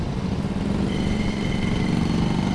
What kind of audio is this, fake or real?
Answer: real